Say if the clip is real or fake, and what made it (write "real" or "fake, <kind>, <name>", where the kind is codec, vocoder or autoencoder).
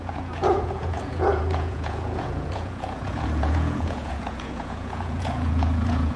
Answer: fake, vocoder, Vocos